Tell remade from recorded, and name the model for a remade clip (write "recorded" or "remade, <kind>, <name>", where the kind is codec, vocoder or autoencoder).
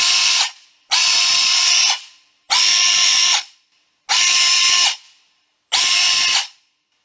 recorded